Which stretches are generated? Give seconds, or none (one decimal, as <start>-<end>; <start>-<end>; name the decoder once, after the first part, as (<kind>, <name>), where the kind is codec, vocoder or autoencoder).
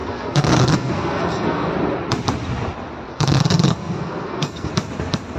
0.0-1.7 (codec, SNAC); 3.1-4.7